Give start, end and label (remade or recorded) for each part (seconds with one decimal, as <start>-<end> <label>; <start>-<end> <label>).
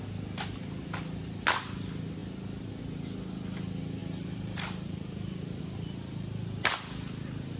0.0-4.0 recorded; 4.0-5.6 remade; 5.6-7.6 recorded